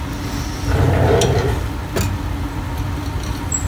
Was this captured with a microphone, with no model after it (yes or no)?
yes